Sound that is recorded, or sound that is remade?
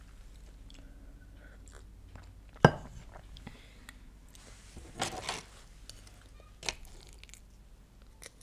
recorded